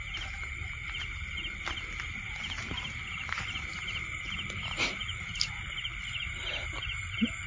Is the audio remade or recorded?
remade